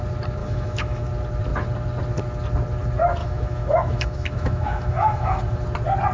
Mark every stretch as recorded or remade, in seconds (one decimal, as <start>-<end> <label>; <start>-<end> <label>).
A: 0.0-0.4 recorded; 0.4-1.1 remade; 1.1-3.2 recorded; 3.2-5.4 remade; 5.4-6.1 recorded